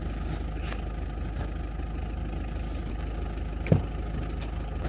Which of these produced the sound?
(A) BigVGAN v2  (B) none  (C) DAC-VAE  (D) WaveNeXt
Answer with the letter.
B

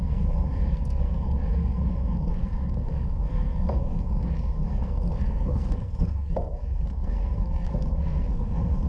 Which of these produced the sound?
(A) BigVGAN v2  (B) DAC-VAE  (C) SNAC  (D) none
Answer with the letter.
C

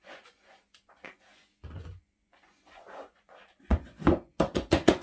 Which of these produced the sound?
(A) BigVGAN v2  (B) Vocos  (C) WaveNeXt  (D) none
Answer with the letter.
B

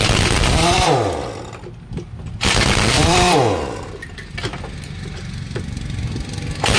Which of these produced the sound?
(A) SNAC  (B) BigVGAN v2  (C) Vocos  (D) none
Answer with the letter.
D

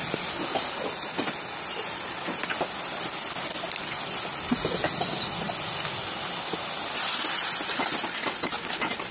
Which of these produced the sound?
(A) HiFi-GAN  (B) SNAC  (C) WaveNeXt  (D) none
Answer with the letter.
D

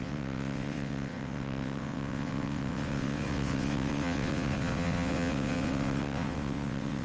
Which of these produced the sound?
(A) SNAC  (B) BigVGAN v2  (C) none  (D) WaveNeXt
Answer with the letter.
D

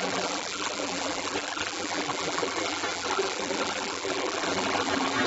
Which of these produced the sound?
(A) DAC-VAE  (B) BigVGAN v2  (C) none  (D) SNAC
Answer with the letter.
B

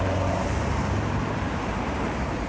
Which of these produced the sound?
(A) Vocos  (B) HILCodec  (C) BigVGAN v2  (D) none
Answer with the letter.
C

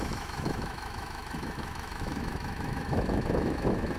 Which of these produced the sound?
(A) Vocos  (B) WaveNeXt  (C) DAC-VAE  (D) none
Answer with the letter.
C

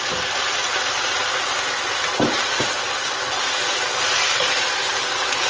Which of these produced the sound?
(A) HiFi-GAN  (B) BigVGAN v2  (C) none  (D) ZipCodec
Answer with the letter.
C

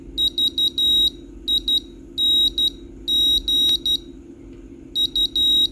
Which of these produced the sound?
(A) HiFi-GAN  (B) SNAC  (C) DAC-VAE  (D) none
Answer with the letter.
D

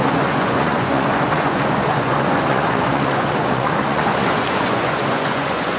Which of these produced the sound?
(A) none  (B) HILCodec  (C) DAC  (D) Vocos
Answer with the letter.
D